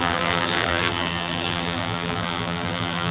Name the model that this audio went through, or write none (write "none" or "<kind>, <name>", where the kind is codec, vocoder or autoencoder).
vocoder, BigVGAN v2